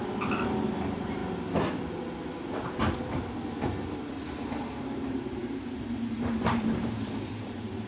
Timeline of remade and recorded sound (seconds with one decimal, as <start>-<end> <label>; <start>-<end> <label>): 0.0-0.7 recorded; 0.7-1.2 remade; 1.2-4.8 recorded; 4.8-7.9 remade